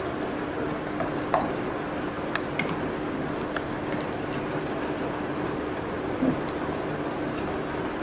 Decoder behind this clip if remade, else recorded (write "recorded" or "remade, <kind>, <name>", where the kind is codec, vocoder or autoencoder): recorded